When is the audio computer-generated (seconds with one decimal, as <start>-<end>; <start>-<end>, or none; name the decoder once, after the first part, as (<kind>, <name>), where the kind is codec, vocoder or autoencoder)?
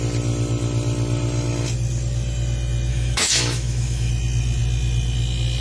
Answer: 2.9-4.1 (autoencoder, DAC-VAE)